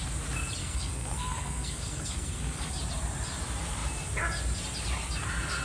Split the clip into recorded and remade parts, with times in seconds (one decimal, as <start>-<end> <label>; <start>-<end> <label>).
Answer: 0.0-0.6 recorded; 0.6-2.7 remade; 2.7-5.6 recorded